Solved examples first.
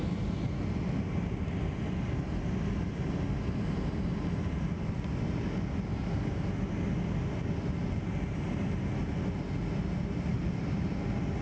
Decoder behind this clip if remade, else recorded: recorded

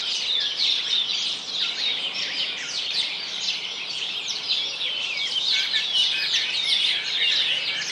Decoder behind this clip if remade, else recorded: recorded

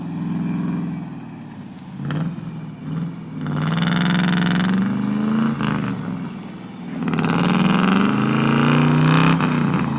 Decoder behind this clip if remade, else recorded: recorded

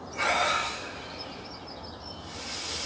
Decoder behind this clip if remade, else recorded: recorded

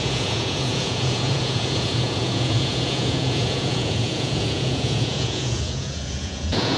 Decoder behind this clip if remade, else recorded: remade, vocoder, Vocos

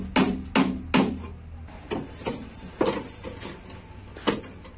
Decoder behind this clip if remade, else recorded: recorded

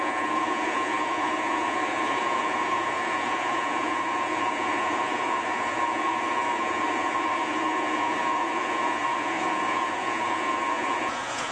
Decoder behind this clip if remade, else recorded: remade, vocoder, Vocos